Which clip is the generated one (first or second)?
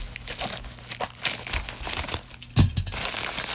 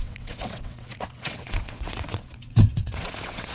second